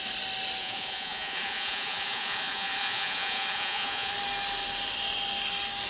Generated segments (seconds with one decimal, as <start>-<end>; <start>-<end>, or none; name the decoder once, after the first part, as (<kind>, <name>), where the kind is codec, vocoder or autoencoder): 0.6-4.1 (vocoder, Vocos)